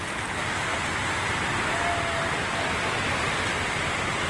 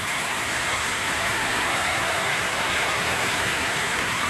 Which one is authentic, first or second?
first